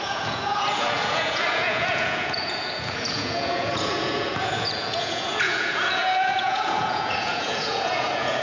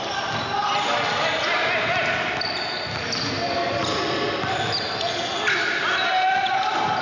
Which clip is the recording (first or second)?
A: second